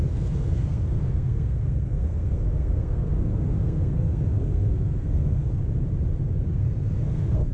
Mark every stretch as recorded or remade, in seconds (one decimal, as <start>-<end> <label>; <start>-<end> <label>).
0.0-5.6 remade; 5.6-6.5 recorded; 6.5-7.5 remade